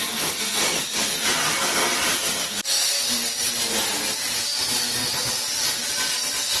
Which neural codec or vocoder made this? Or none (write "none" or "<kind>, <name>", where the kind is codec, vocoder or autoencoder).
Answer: none